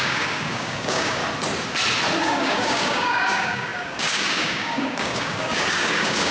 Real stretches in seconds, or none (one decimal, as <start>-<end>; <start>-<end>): 1.2-2.2